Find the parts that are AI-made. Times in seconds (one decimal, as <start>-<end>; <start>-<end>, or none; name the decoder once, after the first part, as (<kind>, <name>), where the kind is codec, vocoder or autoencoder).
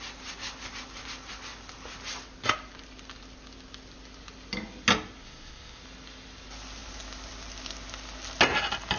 5.2-5.8 (codec, ZipCodec)